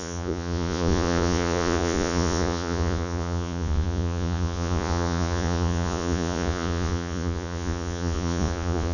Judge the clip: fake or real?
fake